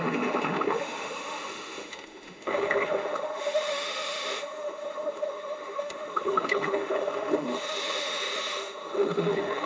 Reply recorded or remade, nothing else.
remade